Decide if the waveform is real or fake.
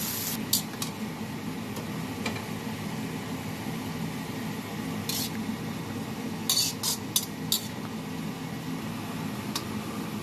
real